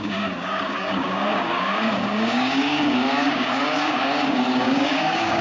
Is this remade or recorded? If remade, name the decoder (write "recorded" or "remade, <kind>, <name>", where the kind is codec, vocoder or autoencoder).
remade, codec, DAC